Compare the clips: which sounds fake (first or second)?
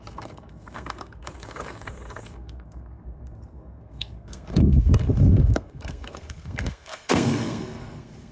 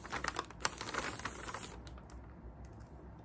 first